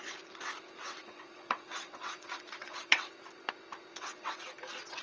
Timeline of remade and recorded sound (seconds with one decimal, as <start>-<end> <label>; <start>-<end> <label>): 0.0-0.8 recorded; 0.8-3.1 remade; 3.1-3.9 recorded; 3.9-4.4 remade; 4.4-5.0 recorded